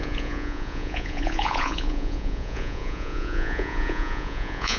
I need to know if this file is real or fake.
fake